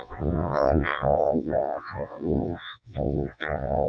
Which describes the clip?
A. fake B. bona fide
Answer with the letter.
A